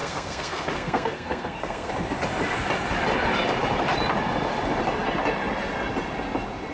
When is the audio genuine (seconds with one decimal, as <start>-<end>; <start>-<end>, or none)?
1.9-6.7